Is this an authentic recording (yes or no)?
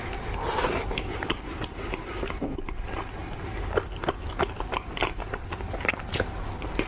yes